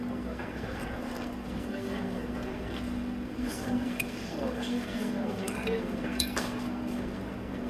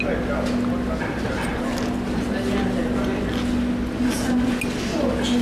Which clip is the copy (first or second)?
first